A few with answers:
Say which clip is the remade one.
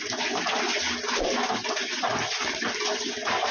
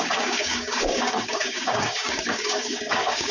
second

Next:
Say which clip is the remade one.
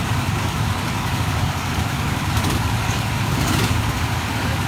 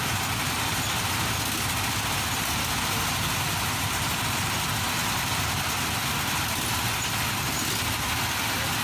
first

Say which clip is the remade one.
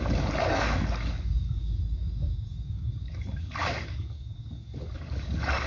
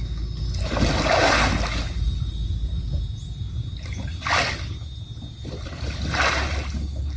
first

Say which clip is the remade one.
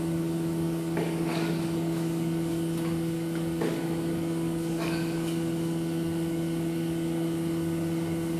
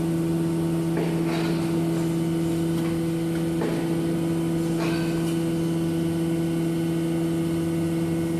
first